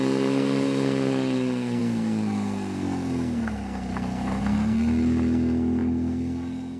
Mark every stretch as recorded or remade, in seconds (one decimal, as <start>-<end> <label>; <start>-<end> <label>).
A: 0.0-6.8 remade